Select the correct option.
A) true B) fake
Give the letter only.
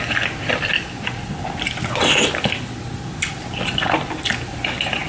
A